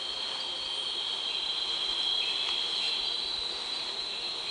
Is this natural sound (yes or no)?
yes